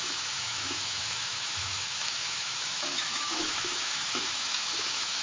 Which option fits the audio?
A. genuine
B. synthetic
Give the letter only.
B